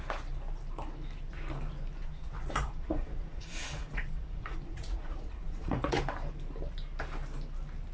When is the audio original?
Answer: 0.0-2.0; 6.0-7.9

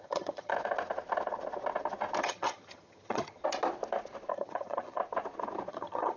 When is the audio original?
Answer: 0.5-2.2; 3.4-4.3; 5.0-5.7

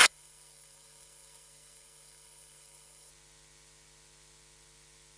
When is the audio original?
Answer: 3.1-5.2